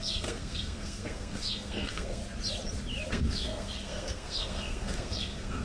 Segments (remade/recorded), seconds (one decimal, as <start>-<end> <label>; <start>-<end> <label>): 0.0-2.2 remade; 2.2-3.1 recorded; 3.1-5.6 remade